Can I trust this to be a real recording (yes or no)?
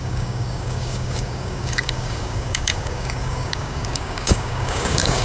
no